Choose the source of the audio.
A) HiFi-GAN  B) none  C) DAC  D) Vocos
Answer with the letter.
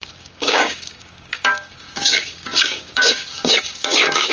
C